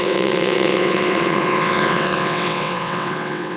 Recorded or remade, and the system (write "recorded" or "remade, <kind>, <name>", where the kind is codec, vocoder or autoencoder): remade, vocoder, WaveNeXt